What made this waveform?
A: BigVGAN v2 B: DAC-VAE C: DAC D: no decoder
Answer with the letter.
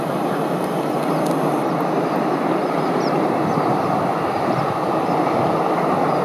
D